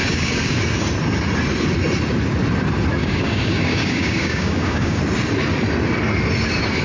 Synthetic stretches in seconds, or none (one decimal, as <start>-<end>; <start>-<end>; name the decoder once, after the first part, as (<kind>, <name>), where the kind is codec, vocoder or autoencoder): 0.0-0.6 (codec, DAC); 3.0-5.0